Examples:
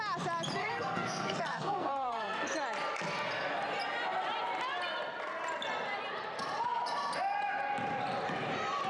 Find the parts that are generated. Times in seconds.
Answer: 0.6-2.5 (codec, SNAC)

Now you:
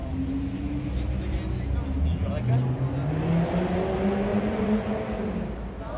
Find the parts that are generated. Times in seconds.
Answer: 4.3-5.0 (vocoder, Vocos)

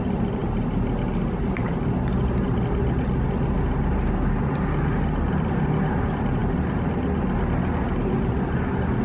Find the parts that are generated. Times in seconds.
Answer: none

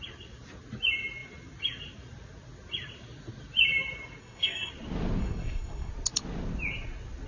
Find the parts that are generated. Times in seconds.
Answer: 4.2-4.7 (codec, SNAC); 5.2-5.9

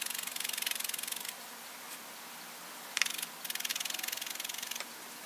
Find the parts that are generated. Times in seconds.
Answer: none

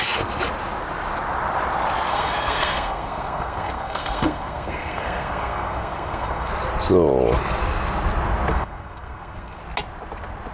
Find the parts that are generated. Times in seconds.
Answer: 2.1-6.5 (codec, SNAC); 8.5-9.6

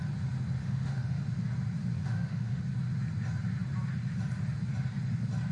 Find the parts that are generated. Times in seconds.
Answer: 0.6-1.2 (autoencoder, DAC-VAE); 2.0-2.6

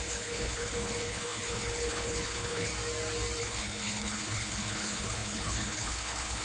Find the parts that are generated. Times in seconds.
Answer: 0.0-2.7 (codec, HILCodec); 3.4-6.4